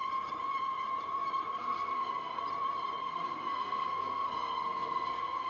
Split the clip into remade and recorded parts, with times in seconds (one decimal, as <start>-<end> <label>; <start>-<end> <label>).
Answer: 0.0-1.5 recorded; 1.5-2.4 remade; 2.4-3.0 recorded; 3.0-5.5 remade